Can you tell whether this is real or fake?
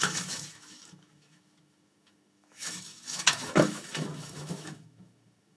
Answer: fake